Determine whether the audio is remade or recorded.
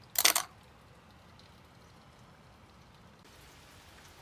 recorded